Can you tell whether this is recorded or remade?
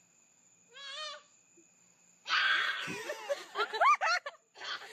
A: recorded